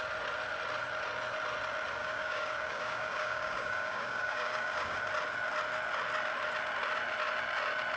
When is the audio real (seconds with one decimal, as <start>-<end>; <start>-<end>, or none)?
0.0-2.0; 5.0-8.0